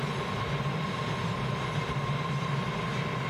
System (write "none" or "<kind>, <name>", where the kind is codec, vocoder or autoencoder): none